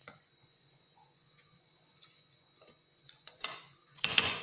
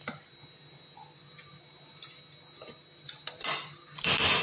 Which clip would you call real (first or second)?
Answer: second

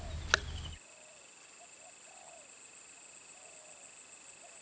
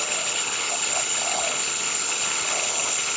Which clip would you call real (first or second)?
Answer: first